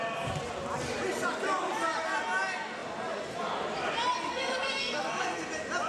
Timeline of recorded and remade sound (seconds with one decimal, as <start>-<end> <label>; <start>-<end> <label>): 0.0-4.3 recorded; 4.3-5.4 remade; 5.4-5.9 recorded